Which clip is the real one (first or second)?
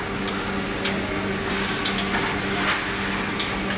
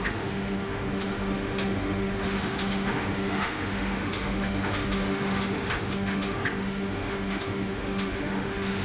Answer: first